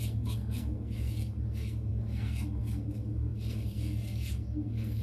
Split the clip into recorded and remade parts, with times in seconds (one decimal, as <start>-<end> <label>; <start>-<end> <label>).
0.0-5.0 remade